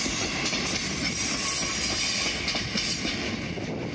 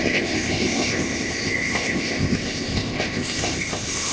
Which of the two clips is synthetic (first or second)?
second